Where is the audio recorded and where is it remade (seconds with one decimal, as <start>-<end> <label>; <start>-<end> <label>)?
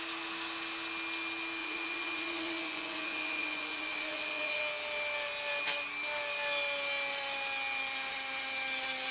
0.0-1.6 recorded; 1.6-4.6 remade; 4.6-9.1 recorded